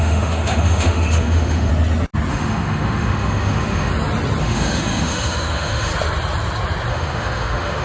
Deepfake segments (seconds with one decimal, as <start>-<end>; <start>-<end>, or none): 0.0-1.7; 2.3-3.9; 4.4-5.9; 6.9-7.8